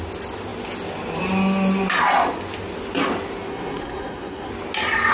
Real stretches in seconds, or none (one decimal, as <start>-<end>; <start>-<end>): 0.0-3.5; 4.5-5.1